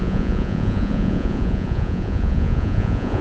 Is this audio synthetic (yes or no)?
yes